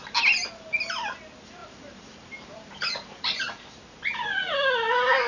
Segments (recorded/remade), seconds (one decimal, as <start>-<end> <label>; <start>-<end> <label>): 0.0-1.6 recorded; 1.6-3.4 remade; 3.4-5.3 recorded